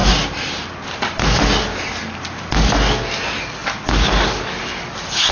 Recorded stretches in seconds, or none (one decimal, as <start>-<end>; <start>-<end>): 0.0-5.3